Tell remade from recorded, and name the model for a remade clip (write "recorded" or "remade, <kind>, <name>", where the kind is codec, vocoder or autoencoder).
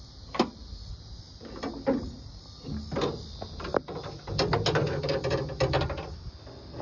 recorded